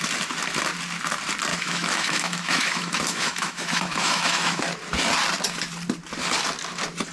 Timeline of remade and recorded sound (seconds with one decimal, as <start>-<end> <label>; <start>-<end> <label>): 0.0-1.5 recorded; 1.5-4.6 remade; 4.6-7.1 recorded